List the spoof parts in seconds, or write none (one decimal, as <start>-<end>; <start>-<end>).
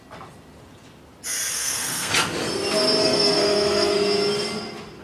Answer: 1.5-2.1; 3.0-3.9